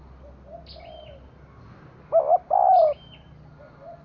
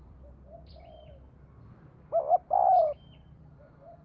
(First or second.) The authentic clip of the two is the first